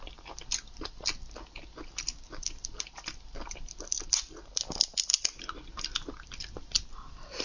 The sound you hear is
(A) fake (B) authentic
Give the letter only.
B